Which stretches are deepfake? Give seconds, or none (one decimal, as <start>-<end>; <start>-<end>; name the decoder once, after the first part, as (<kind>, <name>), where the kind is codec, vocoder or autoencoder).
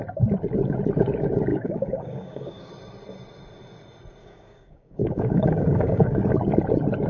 1.5-2.7 (codec, DAC); 4.2-6.3